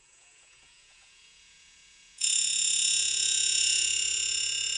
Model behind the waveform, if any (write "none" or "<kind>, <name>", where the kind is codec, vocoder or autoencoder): vocoder, Vocos